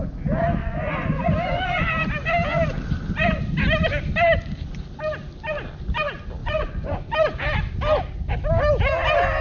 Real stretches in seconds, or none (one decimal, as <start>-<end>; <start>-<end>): 0.0-0.6; 1.9-6.4; 7.0-9.4